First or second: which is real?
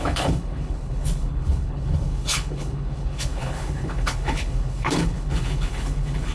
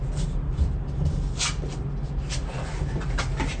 second